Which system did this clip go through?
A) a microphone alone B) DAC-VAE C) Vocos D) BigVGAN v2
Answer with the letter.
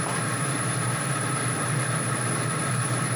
D